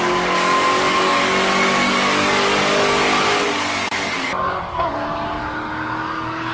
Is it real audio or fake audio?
fake